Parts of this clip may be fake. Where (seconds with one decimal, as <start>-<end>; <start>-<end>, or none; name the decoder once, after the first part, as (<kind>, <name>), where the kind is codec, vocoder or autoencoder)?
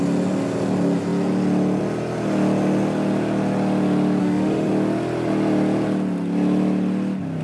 4.2-4.7 (autoencoder, DAC-VAE)